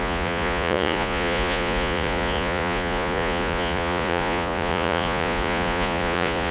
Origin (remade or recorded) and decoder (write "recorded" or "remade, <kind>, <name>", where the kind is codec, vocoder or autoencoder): remade, vocoder, Vocos